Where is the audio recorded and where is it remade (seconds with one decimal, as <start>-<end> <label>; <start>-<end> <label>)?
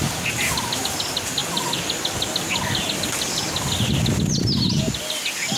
0.0-5.6 recorded